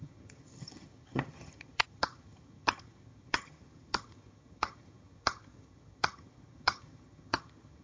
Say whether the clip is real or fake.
fake